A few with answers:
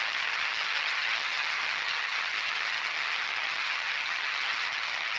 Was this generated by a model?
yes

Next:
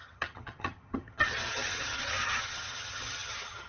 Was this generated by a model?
yes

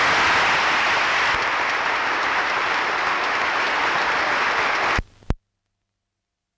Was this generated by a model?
no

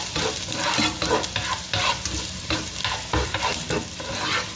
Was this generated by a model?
no